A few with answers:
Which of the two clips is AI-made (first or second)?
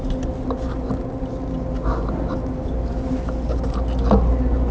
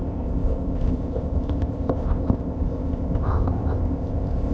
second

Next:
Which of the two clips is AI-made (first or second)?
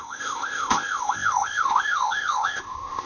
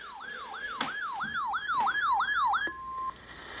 first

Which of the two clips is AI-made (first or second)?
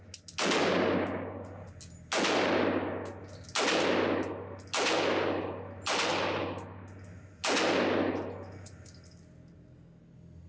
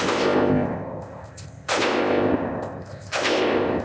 second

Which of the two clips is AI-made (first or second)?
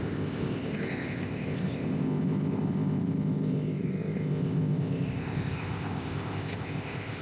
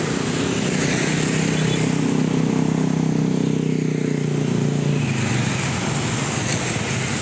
first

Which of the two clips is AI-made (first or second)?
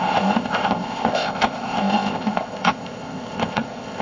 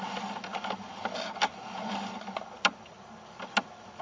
first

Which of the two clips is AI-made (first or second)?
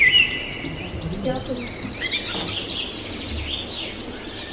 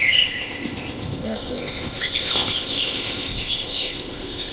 second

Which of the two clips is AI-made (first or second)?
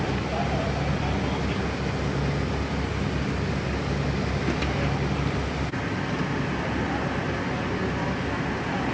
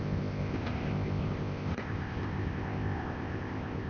second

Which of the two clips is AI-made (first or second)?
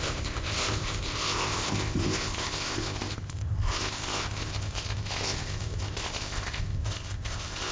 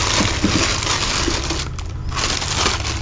first